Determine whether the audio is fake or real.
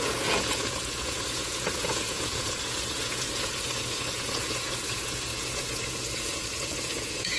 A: fake